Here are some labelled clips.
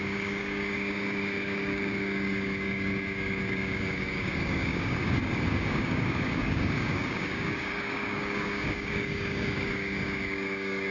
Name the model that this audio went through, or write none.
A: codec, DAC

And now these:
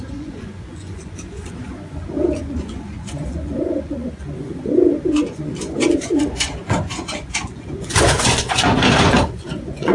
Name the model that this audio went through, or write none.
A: vocoder, Vocos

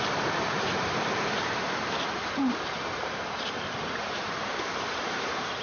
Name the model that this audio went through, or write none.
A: vocoder, BigVGAN v2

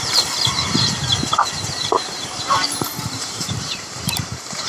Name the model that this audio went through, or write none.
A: vocoder, BigVGAN v2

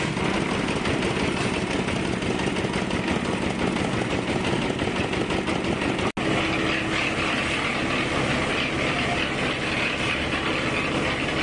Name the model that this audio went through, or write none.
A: none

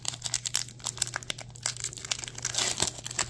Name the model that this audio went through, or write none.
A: none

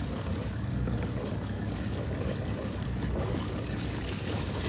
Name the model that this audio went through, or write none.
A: codec, DAC